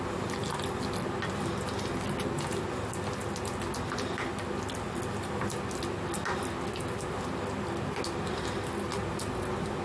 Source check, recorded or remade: recorded